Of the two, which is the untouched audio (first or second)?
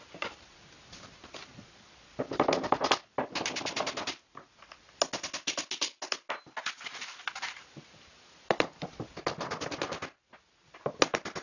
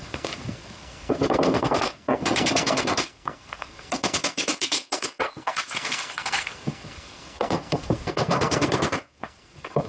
first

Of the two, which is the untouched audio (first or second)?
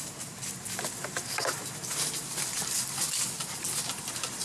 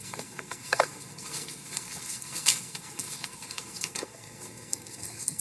first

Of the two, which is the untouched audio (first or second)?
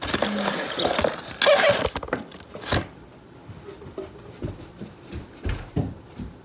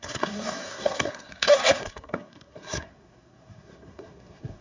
first